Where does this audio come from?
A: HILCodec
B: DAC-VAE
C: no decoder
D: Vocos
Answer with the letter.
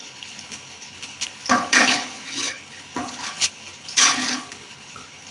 A